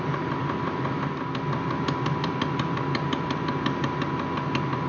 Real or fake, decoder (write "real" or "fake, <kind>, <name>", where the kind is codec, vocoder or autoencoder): real